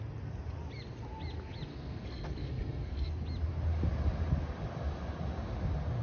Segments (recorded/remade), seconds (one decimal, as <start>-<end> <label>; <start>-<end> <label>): 0.0-1.7 recorded; 1.7-3.1 remade; 3.1-6.0 recorded